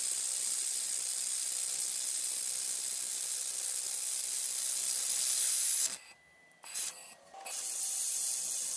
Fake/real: real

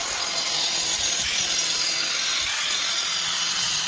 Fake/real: real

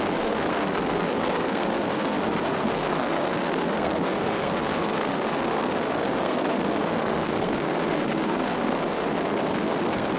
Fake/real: fake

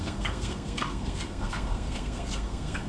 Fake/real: fake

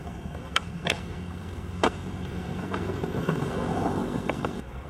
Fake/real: fake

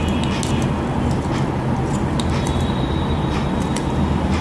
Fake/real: real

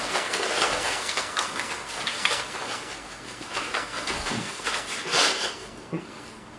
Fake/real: fake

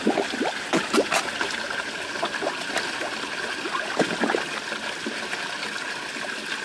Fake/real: real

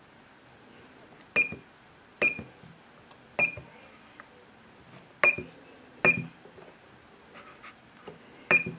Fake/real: real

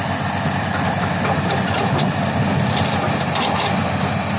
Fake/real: real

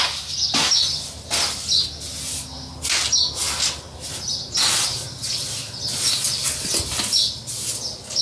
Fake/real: real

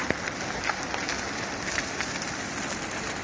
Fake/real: real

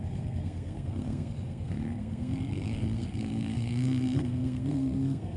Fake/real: fake